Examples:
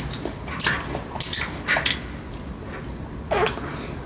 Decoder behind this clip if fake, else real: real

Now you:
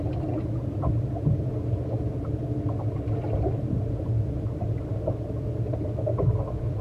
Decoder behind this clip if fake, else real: real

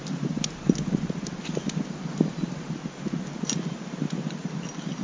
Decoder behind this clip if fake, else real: real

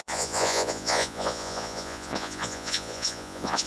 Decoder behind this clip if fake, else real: fake, vocoder, Vocos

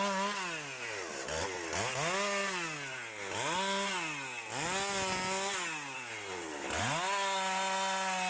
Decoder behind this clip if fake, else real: real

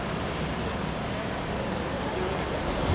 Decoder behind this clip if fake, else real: real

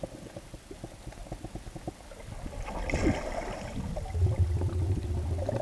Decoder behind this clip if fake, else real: real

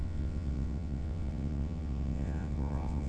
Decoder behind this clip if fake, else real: fake, vocoder, WaveNeXt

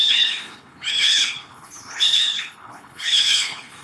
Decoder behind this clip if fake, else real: fake, codec, HILCodec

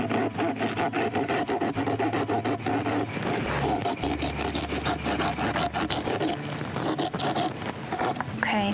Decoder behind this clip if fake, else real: real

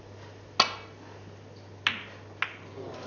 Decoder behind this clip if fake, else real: real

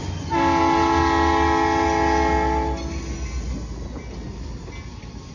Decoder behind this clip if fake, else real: real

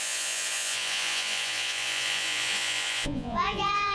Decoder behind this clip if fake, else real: fake, vocoder, Vocos